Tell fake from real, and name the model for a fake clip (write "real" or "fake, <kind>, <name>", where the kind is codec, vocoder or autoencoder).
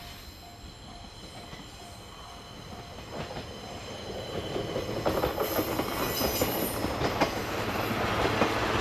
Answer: real